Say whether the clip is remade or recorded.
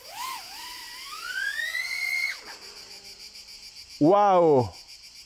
recorded